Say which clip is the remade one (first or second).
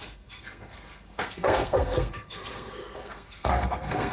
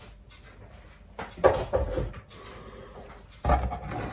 first